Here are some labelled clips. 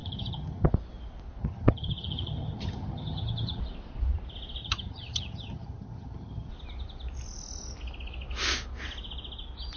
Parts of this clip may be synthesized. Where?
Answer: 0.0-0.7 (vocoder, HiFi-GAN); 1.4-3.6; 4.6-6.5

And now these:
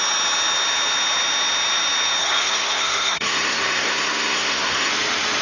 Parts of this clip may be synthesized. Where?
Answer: 2.2-4.9 (codec, SNAC)

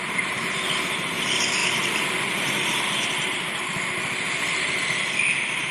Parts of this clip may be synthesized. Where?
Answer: none

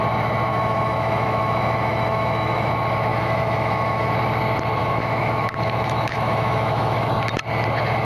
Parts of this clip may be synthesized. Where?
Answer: 0.5-2.7 (autoencoder, DAC-VAE); 3.1-4.1; 4.8-7.1